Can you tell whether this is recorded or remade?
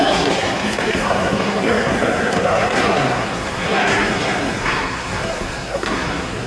remade